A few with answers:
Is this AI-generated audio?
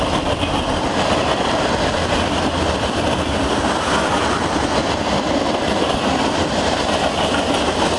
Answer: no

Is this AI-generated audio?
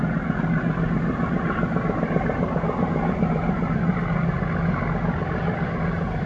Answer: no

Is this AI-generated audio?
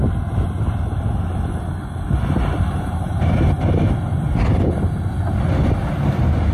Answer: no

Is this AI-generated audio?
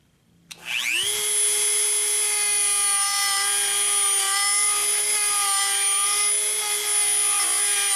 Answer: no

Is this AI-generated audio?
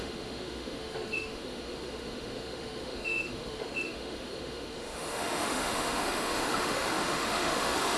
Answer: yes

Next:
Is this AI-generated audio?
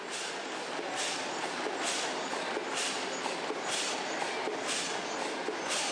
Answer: no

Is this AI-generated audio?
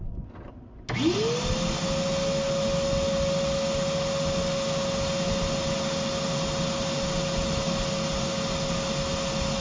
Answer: no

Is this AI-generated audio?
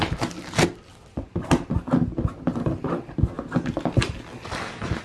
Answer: no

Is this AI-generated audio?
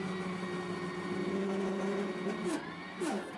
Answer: no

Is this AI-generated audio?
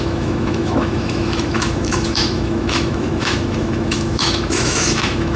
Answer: yes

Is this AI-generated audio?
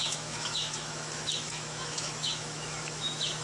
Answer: yes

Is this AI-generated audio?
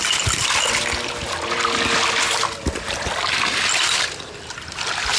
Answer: no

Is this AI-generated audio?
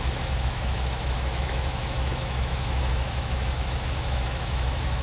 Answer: yes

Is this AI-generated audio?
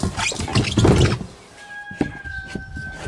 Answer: no